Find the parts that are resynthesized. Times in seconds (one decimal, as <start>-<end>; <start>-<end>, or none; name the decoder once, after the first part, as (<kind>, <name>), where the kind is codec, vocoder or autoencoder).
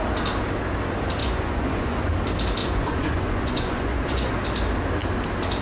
1.2-2.1 (vocoder, Vocos); 2.6-4.3